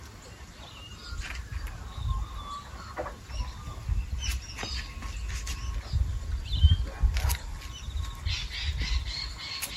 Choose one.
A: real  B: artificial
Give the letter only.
A